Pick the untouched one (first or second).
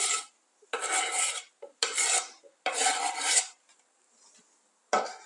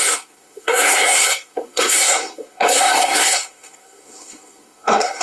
first